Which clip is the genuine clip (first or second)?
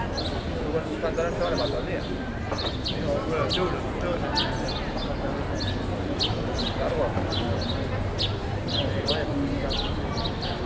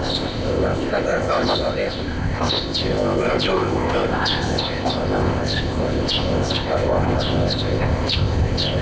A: first